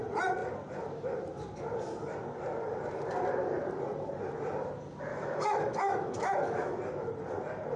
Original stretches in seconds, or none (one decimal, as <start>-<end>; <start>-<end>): 0.0-5.1; 6.8-7.8